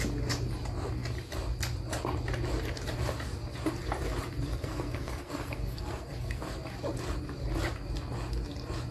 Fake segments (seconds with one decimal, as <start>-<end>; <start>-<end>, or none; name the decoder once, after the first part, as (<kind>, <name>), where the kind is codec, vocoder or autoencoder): 4.5-6.4 (codec, SNAC)